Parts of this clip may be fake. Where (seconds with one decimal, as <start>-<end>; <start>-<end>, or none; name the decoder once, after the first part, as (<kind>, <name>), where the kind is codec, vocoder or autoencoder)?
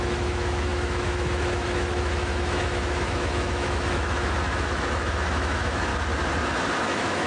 0.0-5.9 (autoencoder, DAC-VAE); 6.7-7.3